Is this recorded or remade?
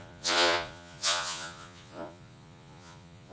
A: remade